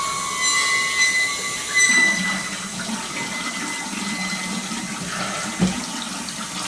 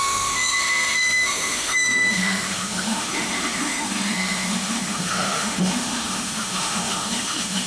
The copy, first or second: second